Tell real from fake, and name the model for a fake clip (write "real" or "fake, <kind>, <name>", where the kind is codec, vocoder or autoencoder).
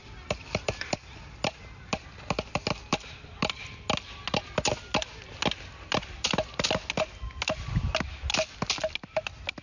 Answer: real